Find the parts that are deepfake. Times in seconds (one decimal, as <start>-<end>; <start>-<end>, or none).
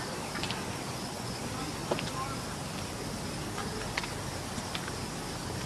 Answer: 0.9-1.4